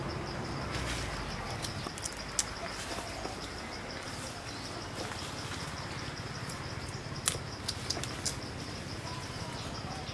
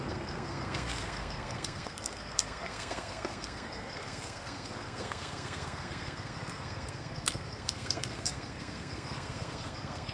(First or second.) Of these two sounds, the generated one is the second